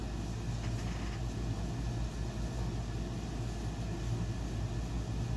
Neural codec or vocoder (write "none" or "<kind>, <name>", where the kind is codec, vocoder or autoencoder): none